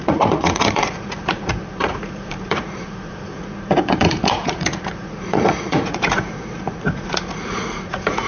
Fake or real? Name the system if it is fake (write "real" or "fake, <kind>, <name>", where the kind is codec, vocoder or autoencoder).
fake, vocoder, Vocos